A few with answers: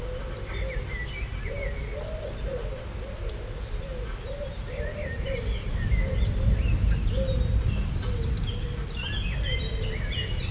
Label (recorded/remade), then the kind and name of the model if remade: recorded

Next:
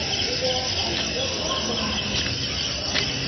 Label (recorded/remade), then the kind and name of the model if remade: recorded